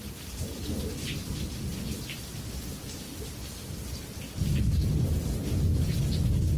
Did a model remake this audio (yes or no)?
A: yes